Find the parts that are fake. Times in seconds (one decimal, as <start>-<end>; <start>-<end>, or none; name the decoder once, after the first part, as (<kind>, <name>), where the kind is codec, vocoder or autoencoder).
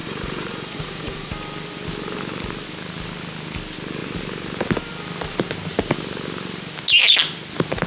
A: 0.0-1.3 (vocoder, Vocos)